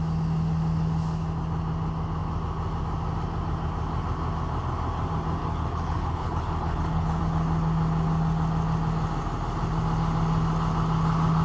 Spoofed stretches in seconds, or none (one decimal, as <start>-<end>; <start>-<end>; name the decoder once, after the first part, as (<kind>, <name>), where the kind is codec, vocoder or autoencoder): 5.4-7.2 (codec, HILCodec)